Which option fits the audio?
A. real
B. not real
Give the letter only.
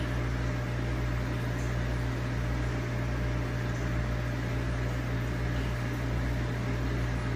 A